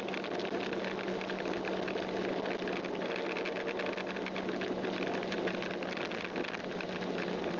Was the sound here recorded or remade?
recorded